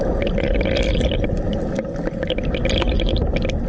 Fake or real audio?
real